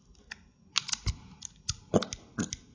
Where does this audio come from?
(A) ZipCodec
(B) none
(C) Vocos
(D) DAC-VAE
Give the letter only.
B